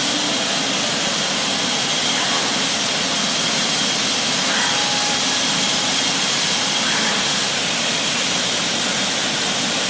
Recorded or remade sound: recorded